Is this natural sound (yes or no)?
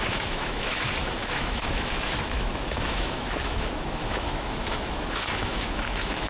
no